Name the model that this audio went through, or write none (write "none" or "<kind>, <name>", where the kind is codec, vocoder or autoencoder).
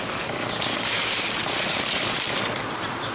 none